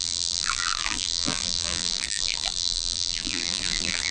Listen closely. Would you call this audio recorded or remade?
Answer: remade